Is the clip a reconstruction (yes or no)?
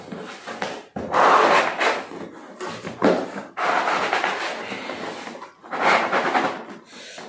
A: no